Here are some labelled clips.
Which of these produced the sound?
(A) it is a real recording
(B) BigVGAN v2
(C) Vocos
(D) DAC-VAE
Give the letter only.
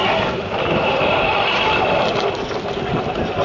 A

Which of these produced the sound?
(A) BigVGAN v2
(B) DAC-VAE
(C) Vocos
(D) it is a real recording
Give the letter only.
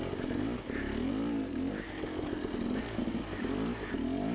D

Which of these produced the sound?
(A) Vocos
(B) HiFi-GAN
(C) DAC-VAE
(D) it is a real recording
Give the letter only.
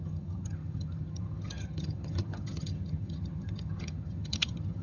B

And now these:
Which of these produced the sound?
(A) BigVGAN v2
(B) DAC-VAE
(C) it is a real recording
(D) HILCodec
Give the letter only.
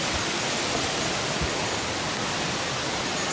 C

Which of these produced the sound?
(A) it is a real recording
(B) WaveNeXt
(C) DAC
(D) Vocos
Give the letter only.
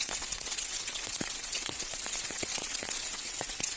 B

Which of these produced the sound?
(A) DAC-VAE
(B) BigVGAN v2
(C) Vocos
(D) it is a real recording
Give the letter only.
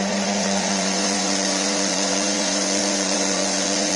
C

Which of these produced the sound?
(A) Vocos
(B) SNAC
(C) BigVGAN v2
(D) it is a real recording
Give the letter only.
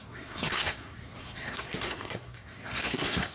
B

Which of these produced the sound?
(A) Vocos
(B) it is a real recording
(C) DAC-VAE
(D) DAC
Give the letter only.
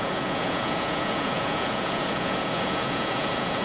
A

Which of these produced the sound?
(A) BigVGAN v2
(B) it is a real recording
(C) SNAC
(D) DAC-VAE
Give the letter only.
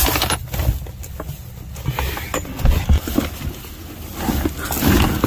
B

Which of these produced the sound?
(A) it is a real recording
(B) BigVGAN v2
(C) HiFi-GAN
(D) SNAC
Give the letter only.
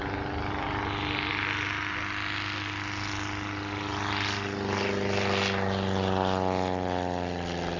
A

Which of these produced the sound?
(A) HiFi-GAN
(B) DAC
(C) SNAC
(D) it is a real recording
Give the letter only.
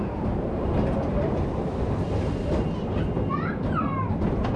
D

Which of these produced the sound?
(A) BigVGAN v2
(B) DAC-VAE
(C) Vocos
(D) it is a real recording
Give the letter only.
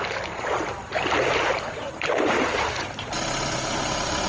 A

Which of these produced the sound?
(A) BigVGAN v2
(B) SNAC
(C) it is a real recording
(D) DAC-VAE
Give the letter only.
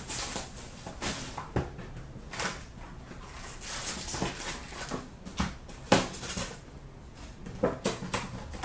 C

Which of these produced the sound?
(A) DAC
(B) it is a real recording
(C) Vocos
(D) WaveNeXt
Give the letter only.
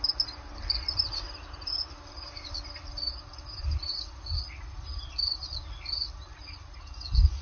B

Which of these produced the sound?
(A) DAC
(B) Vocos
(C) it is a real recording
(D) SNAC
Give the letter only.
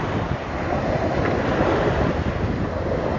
C